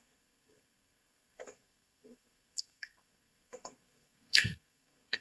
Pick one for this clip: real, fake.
fake